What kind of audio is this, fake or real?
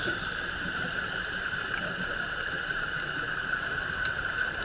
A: fake